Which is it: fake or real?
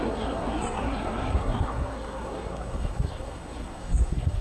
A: fake